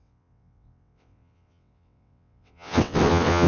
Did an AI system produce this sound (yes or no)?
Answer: yes